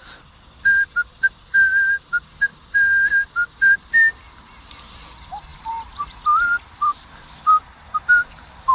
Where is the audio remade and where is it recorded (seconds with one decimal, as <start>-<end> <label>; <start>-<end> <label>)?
0.0-5.5 recorded; 5.5-8.7 remade